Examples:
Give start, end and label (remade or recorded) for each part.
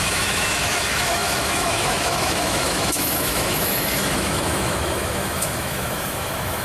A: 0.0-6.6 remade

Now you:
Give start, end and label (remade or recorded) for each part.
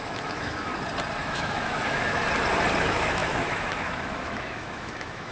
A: 0.0-0.7 remade; 0.7-1.2 recorded; 1.2-2.2 remade; 2.2-2.8 recorded; 2.8-5.3 remade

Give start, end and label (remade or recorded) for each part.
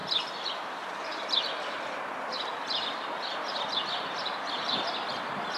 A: 0.0-5.6 recorded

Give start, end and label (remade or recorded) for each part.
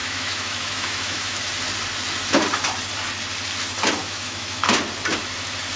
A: 0.0-1.4 remade; 1.4-4.0 recorded; 4.0-4.8 remade; 4.8-5.8 recorded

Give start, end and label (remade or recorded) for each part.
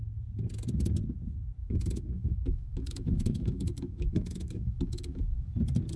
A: 0.0-1.6 recorded; 1.6-5.2 remade; 5.2-6.0 recorded